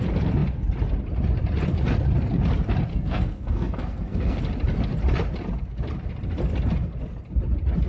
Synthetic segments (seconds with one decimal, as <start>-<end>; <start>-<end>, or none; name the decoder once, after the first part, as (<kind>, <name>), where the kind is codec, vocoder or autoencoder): 2.9-4.4 (codec, SNAC)